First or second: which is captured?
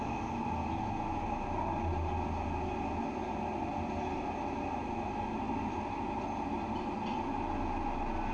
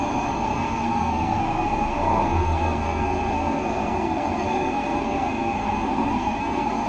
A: first